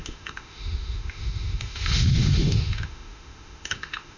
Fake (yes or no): yes